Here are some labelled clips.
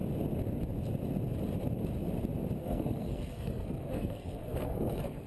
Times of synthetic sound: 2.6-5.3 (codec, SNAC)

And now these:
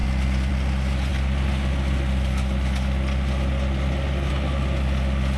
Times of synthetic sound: none

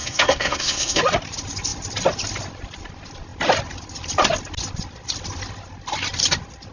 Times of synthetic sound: 0.0-1.0 (codec, SNAC)

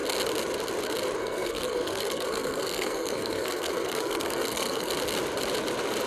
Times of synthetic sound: 1.2-4.9 (codec, SNAC)

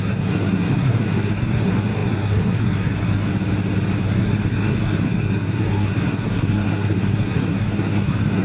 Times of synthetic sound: 0.0-3.3 (codec, SNAC); 4.0-8.4